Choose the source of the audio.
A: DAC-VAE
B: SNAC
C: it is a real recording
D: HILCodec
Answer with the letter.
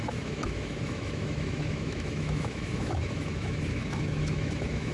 A